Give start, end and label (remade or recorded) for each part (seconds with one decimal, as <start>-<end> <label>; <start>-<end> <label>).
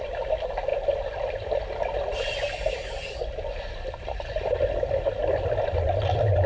0.0-6.5 recorded